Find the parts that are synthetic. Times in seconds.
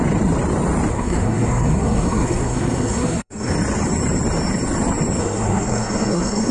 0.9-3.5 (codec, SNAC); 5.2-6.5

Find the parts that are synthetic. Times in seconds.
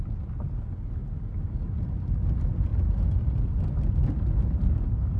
none